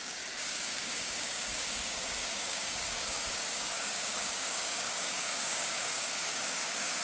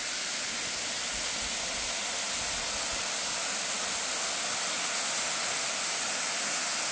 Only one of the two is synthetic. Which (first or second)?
first